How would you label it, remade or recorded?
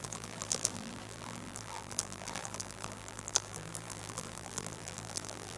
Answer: remade